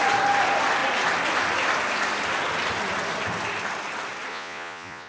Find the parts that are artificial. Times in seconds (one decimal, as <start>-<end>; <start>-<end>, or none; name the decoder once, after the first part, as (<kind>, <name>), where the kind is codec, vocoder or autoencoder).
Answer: 4.3-5.1 (vocoder, Vocos)